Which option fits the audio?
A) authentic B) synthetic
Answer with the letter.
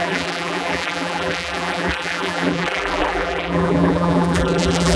B